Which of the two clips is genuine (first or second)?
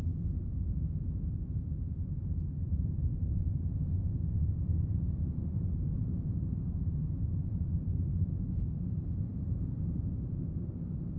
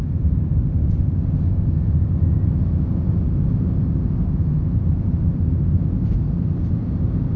second